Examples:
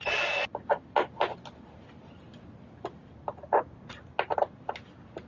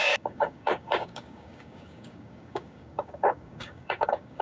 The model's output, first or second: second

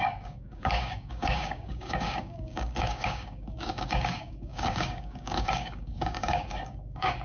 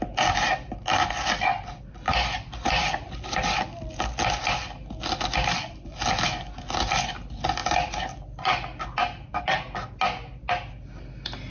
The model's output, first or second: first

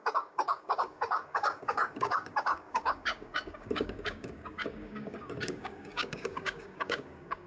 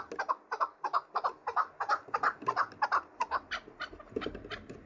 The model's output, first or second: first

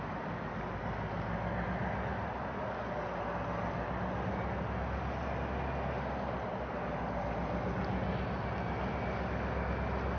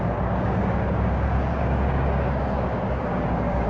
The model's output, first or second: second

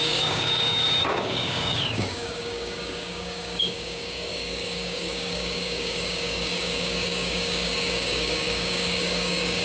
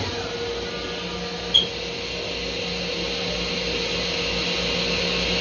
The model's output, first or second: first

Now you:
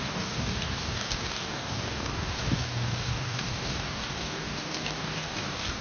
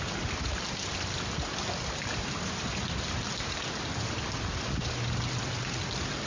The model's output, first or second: first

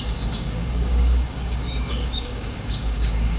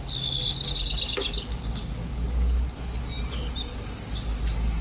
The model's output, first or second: first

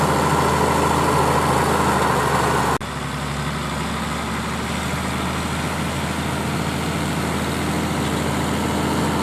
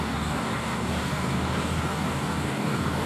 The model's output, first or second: second